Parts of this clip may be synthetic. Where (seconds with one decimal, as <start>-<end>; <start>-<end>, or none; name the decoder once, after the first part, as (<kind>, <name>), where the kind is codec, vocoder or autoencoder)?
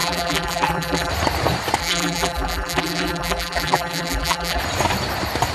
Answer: 0.0-1.1 (vocoder, BigVGAN v2); 1.8-4.6